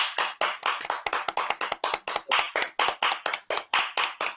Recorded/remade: recorded